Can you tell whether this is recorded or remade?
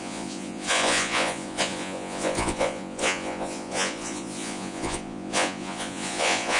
remade